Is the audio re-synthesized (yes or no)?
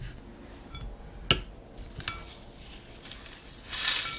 no